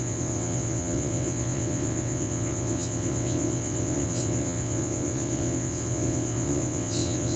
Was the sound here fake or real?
fake